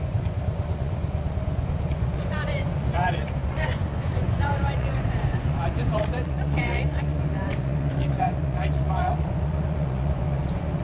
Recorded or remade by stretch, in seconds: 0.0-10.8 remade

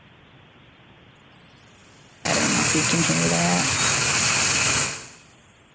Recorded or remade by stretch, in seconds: 0.0-5.7 recorded

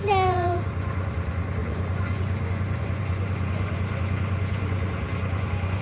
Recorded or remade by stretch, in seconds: 0.0-5.8 remade